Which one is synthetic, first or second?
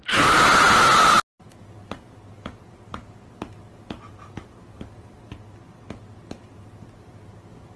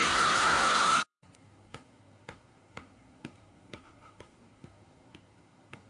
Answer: second